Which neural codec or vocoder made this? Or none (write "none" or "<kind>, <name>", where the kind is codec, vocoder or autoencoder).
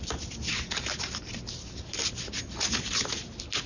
none